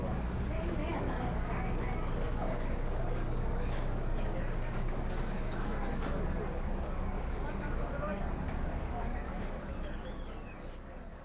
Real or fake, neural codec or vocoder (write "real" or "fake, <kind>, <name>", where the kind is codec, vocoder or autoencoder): fake, codec, DAC